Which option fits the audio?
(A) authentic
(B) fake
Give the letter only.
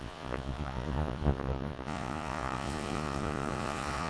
B